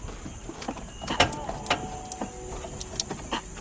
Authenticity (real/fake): real